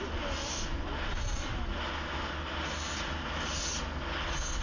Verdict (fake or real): real